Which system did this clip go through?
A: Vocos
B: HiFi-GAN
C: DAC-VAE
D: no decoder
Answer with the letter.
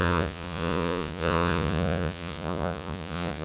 A